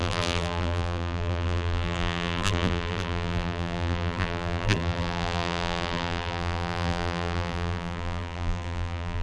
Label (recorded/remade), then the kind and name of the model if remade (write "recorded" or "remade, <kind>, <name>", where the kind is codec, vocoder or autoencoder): remade, vocoder, BigVGAN v2